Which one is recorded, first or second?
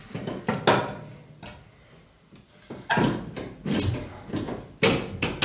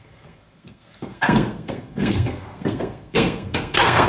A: first